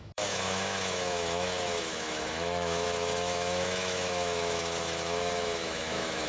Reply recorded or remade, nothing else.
remade